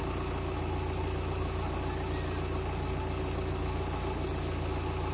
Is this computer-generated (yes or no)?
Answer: no